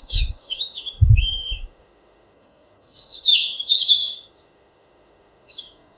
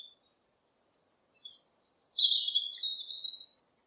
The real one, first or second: second